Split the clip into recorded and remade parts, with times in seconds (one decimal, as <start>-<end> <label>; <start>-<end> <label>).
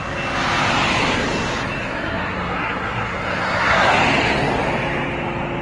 0.0-1.8 recorded; 1.8-4.0 remade; 4.0-5.6 recorded